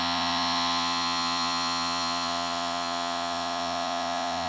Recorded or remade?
remade